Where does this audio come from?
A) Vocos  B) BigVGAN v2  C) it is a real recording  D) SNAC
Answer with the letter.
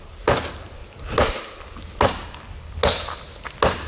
C